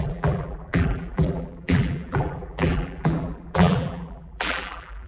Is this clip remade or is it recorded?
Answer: remade